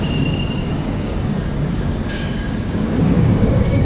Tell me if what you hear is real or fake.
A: fake